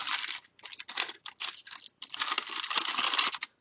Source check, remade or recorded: recorded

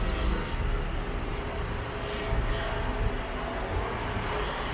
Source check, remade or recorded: recorded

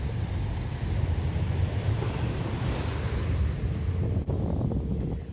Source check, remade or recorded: recorded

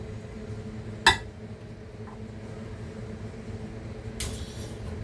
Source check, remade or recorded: recorded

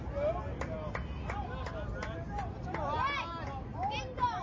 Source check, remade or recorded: recorded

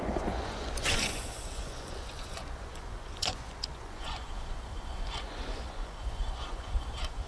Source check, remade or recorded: remade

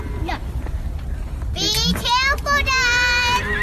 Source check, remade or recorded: recorded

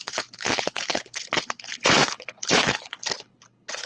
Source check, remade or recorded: remade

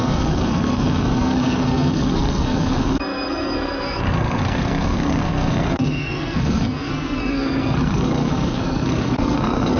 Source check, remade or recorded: remade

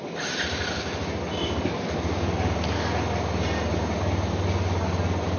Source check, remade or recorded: recorded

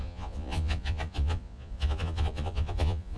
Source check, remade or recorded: remade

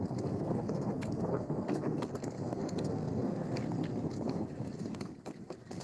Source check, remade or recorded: remade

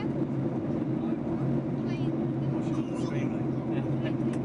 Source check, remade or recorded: recorded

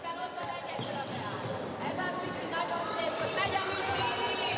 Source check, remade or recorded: remade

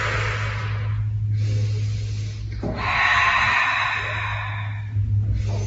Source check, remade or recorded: recorded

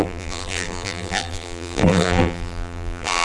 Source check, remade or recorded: remade